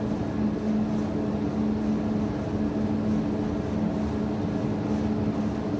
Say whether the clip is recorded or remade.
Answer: recorded